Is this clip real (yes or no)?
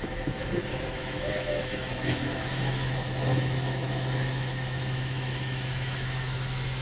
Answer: no